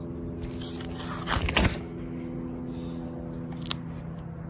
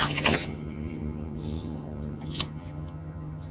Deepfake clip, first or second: second